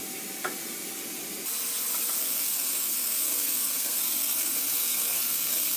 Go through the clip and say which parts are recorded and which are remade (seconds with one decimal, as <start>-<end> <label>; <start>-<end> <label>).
0.0-2.2 recorded; 2.2-5.8 remade